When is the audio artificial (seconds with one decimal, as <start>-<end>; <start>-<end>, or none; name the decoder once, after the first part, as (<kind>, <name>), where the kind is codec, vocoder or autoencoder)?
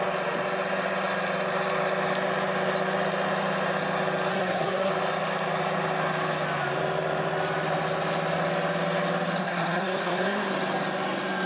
4.3-4.9 (codec, SNAC); 9.4-10.5